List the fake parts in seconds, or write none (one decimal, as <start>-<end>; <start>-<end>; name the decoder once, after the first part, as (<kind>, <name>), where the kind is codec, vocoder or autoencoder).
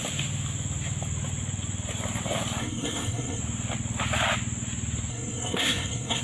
2.6-3.4 (codec, SNAC); 5.1-6.2